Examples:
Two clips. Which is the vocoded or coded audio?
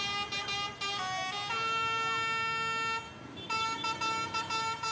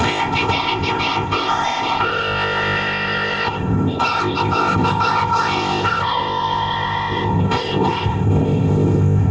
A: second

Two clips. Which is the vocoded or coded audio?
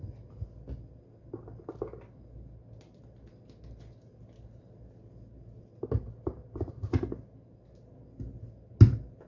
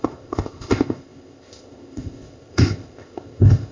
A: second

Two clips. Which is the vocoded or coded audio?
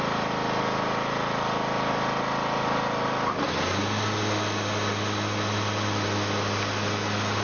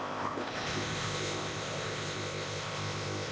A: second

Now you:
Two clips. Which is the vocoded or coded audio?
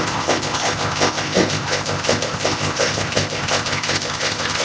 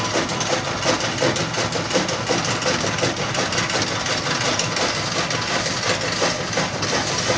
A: first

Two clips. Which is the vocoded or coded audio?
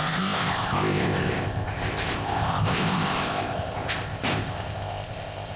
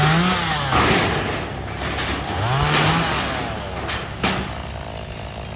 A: first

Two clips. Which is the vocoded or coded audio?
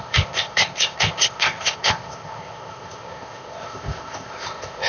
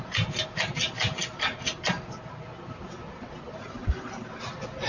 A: first